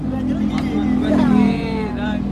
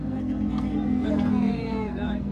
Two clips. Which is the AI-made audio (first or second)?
second